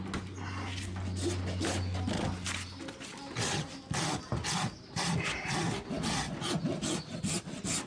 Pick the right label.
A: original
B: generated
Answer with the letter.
A